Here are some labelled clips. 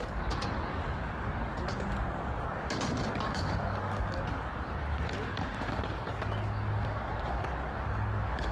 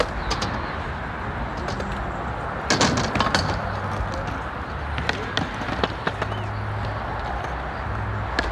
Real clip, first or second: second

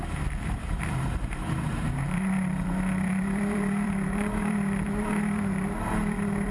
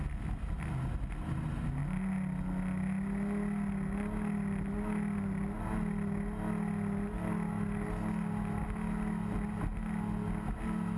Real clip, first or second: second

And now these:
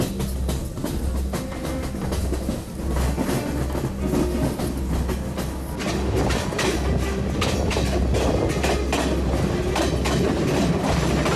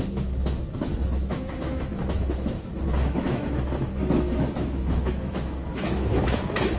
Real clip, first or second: first